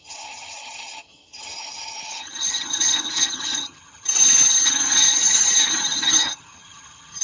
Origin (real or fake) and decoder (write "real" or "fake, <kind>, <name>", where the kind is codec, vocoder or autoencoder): fake, vocoder, HiFi-GAN